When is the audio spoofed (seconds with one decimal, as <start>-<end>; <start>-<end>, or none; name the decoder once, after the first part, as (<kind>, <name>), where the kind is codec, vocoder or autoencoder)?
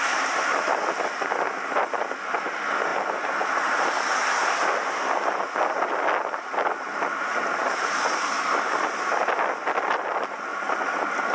none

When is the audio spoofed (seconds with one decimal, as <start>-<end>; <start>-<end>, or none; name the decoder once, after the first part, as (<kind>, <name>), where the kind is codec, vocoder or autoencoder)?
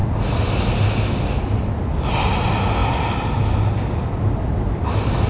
none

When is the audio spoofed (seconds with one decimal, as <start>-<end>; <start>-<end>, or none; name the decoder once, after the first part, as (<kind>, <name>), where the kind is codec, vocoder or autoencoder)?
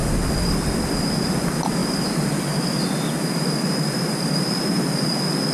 none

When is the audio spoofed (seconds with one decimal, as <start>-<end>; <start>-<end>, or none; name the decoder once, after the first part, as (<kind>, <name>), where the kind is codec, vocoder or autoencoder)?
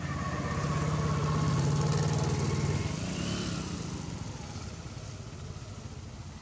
none